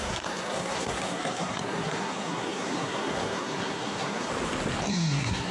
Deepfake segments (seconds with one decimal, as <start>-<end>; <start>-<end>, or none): 0.0-4.3; 4.9-5.5

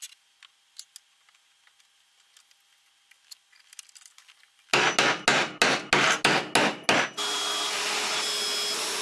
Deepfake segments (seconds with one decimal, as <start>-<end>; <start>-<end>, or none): none